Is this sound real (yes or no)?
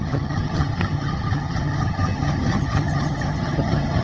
no